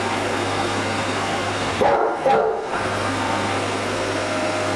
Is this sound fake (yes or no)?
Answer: yes